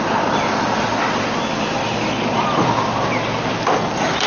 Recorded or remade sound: recorded